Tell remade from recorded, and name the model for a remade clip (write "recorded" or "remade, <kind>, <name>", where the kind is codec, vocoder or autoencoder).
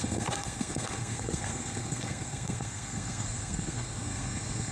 remade, codec, SNAC